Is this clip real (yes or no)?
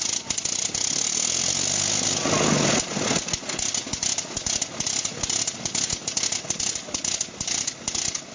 yes